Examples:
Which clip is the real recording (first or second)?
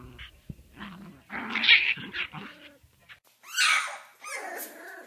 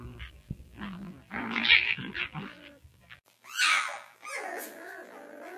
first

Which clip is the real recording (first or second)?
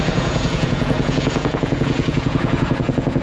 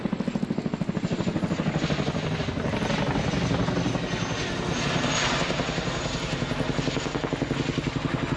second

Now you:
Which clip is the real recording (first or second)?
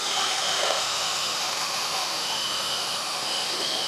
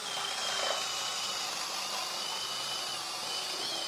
second